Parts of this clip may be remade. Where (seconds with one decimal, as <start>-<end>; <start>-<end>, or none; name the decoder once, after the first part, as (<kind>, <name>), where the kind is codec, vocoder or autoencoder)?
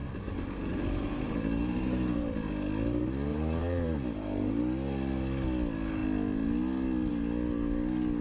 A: 0.0-2.3 (vocoder, BigVGAN v2); 3.3-4.6